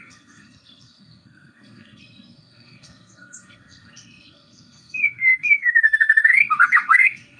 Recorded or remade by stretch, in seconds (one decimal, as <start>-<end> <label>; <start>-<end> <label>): 0.0-7.4 remade